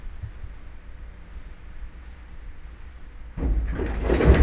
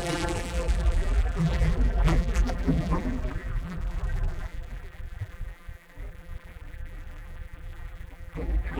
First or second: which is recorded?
first